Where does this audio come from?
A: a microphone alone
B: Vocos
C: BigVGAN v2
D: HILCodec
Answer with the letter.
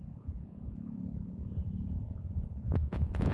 B